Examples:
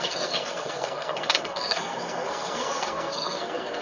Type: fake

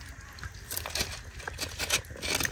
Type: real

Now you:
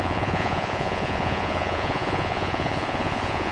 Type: fake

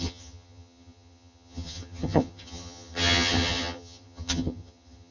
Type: fake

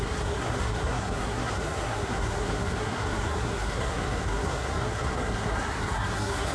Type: fake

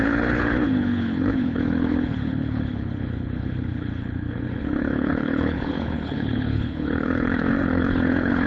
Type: fake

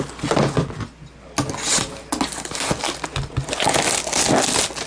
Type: real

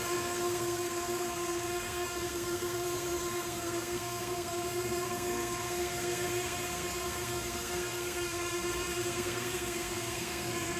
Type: fake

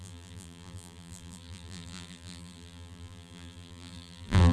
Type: fake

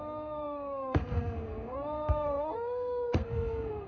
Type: fake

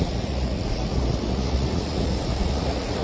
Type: fake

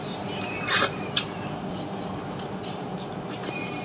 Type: fake